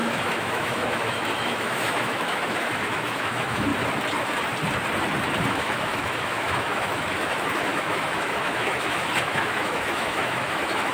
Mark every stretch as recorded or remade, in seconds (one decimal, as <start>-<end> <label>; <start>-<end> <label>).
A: 0.0-3.7 remade; 3.7-5.5 recorded; 5.5-10.9 remade